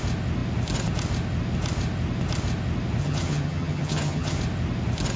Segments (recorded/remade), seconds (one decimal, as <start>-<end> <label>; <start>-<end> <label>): 0.0-3.0 recorded; 3.0-4.4 remade; 4.4-5.2 recorded